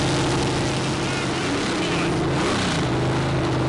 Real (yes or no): yes